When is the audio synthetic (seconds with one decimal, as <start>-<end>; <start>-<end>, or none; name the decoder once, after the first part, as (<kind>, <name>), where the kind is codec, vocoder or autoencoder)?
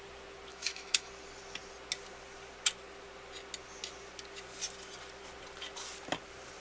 0.5-1.1 (autoencoder, DAC-VAE)